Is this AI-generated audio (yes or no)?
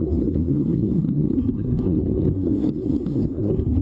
yes